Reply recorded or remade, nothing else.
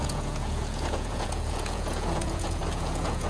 remade